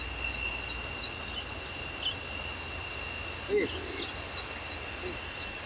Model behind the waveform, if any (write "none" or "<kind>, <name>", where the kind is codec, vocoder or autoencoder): none